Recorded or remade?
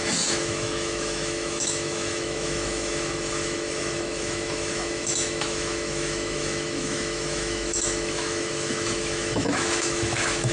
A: remade